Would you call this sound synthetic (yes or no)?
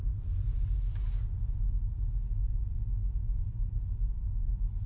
no